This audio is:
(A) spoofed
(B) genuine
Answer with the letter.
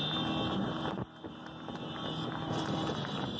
B